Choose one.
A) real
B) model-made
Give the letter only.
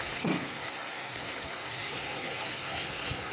B